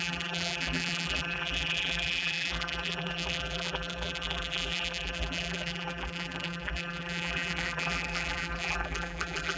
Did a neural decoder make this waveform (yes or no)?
yes